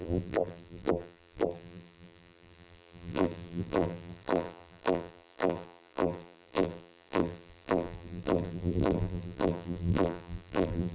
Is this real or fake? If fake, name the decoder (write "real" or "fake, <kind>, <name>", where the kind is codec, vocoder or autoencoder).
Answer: fake, vocoder, BigVGAN v2